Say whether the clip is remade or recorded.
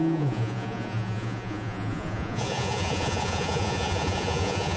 remade